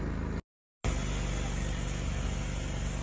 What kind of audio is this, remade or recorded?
recorded